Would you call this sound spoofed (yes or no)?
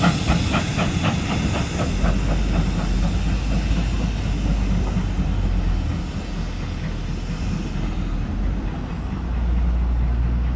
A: no